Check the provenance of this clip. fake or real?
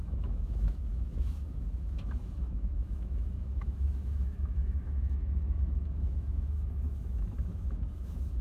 fake